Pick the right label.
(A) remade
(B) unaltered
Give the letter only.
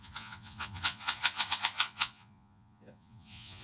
A